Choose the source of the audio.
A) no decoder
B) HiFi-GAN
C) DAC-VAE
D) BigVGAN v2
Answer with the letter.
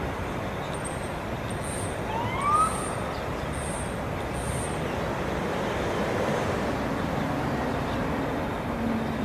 A